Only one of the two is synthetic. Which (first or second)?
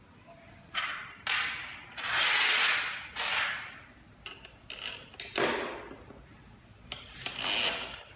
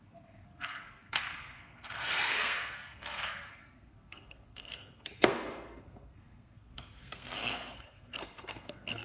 second